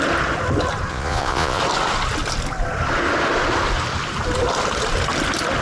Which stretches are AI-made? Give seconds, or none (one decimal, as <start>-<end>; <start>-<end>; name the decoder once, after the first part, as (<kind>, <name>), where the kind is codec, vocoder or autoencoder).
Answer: 0.9-1.6 (vocoder, Vocos)